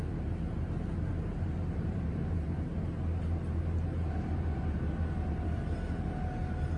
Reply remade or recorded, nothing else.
recorded